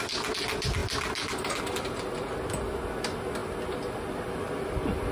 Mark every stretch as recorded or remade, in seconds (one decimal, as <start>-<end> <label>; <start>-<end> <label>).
0.0-5.1 recorded